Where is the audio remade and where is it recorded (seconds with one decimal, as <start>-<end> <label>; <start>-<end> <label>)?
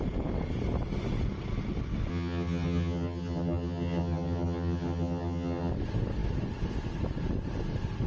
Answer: 0.0-2.1 recorded; 2.1-5.7 remade; 5.7-8.1 recorded